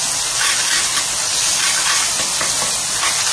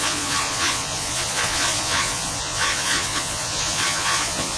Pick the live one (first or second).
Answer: first